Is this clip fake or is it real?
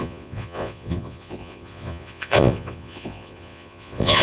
fake